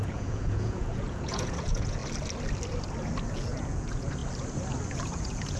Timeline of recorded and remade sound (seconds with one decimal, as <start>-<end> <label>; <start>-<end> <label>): 0.0-2.0 remade; 2.0-3.3 recorded; 3.3-4.2 remade; 4.2-4.9 recorded; 4.9-5.6 remade